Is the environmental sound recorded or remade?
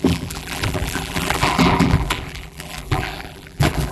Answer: remade